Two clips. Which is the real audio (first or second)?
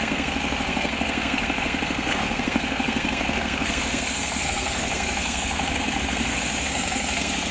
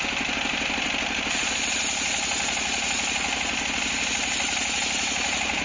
second